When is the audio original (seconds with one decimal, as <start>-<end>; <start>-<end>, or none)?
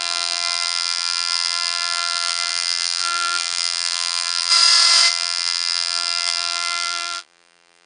4.5-5.1